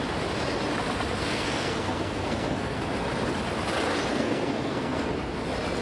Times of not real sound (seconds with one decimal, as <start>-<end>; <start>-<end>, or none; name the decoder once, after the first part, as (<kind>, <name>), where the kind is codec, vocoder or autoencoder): 1.2-2.8 (codec, SNAC); 4.1-5.1